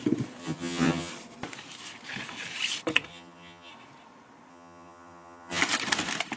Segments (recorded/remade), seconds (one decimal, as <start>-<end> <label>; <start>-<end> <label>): 0.0-0.4 recorded; 0.4-1.1 remade; 1.1-3.1 recorded; 3.1-3.7 remade; 3.7-4.5 recorded; 4.5-5.6 remade; 5.6-6.4 recorded